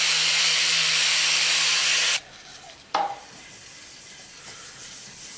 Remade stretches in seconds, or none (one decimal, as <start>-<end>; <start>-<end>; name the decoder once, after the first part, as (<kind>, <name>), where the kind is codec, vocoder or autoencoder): 0.4-1.0 (codec, SNAC)

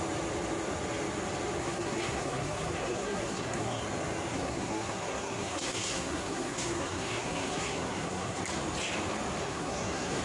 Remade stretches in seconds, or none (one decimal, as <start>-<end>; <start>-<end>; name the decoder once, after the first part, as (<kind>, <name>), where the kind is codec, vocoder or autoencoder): 1.6-3.8 (codec, SNAC); 4.3-8.4; 9.4-10.2